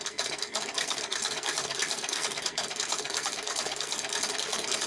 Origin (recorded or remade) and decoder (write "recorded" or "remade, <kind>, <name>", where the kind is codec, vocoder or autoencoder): remade, codec, SNAC